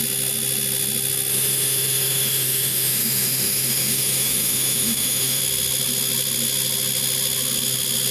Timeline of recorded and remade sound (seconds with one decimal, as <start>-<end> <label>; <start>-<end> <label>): 0.0-1.3 recorded; 1.3-5.4 remade; 5.4-8.1 recorded